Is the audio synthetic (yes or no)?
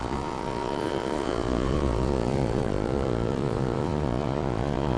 yes